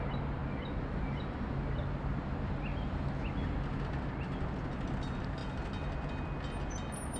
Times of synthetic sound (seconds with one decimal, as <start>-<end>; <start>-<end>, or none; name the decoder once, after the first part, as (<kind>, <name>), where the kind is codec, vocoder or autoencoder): none